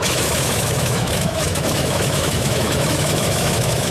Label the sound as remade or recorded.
remade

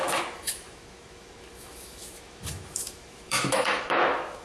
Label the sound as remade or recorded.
remade